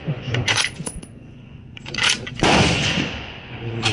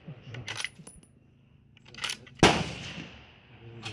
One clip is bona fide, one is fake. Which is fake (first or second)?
first